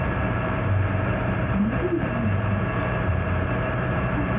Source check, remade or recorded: remade